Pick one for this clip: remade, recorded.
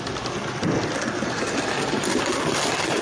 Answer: recorded